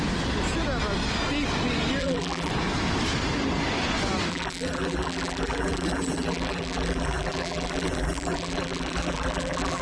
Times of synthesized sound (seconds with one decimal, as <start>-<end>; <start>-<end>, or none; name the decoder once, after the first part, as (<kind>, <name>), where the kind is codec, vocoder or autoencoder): 2.0-2.5 (vocoder, BigVGAN v2); 4.3-9.8